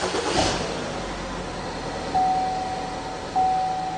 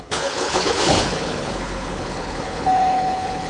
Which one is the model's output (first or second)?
second